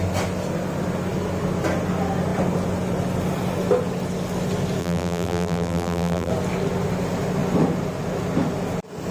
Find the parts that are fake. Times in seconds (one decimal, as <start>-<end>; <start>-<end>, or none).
4.8-6.3